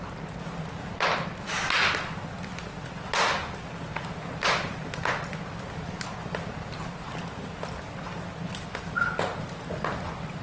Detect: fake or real real